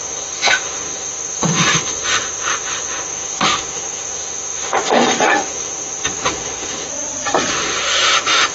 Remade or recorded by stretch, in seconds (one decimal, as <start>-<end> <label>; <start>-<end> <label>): 0.0-6.9 remade; 6.9-7.5 recorded; 7.5-8.5 remade